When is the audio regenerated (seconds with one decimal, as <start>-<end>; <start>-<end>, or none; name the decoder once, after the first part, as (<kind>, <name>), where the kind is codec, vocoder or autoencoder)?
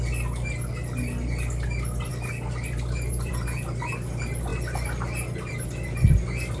none